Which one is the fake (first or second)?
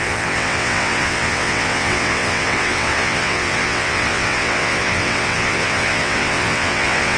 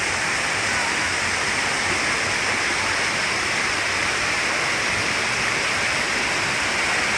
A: first